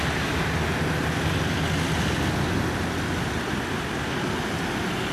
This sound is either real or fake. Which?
real